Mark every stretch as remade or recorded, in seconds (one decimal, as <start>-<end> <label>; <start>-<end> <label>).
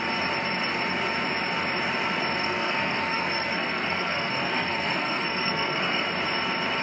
0.0-2.4 recorded; 2.4-6.1 remade; 6.1-6.8 recorded